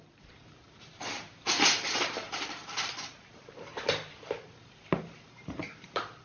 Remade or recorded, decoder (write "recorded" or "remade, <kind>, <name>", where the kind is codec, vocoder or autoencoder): remade, vocoder, BigVGAN v2